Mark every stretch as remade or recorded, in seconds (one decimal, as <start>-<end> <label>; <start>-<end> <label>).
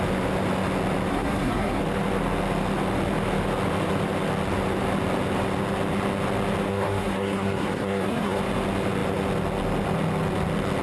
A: 0.0-1.1 recorded; 1.1-1.8 remade; 1.8-6.7 recorded; 6.7-8.4 remade; 8.4-10.8 recorded